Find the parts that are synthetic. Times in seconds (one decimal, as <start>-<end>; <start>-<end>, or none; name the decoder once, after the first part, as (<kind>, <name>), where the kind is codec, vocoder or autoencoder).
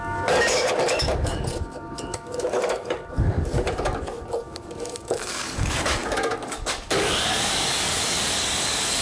0.0-9.0 (codec, DAC)